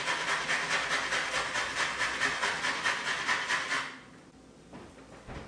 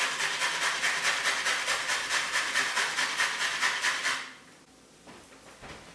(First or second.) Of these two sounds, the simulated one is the second